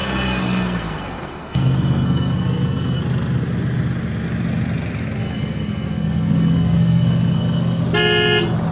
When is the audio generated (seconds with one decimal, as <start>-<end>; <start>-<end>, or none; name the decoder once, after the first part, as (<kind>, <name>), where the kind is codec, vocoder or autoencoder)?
0.0-3.0 (codec, SNAC); 5.2-7.8